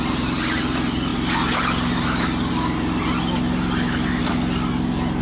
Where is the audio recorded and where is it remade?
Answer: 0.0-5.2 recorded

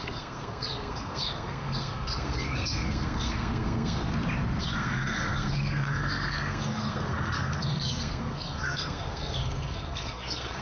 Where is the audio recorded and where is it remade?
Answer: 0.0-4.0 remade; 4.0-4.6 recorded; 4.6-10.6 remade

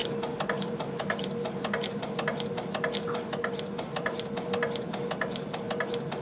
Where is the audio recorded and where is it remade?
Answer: 0.0-6.2 recorded

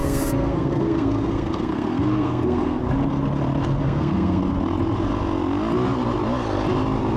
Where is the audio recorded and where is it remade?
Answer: 0.0-2.8 remade; 2.8-3.8 recorded; 3.8-4.4 remade; 4.4-7.2 recorded

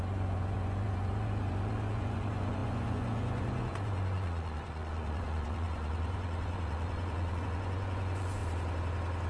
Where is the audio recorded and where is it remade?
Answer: 0.0-8.4 remade; 8.4-9.3 recorded

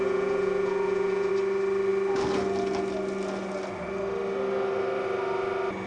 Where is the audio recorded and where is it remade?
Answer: 0.0-1.3 remade; 1.3-5.9 recorded